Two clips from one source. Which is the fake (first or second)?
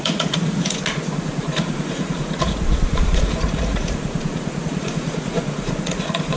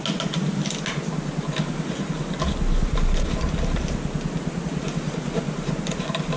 first